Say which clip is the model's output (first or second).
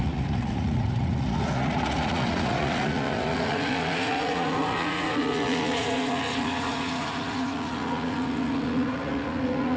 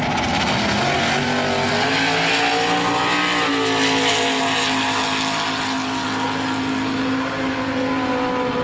first